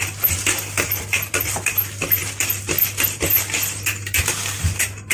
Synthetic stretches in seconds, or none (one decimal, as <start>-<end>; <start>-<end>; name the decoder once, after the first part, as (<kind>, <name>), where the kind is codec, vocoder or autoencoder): none